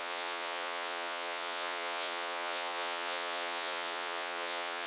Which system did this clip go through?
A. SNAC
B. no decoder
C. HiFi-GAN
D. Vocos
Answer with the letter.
D